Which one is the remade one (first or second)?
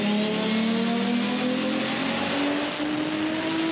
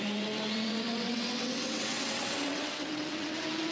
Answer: second